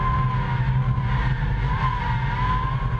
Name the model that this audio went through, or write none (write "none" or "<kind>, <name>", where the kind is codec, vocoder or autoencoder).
none